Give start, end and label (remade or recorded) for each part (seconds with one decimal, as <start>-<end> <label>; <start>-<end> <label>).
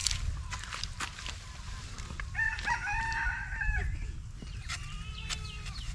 0.0-2.5 recorded; 2.5-4.1 remade; 4.1-5.9 recorded